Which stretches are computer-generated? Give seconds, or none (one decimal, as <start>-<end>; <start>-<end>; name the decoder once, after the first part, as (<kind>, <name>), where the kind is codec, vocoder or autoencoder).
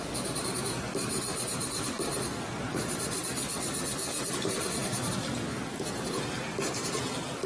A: 1.3-2.5 (vocoder, BigVGAN v2); 4.0-5.1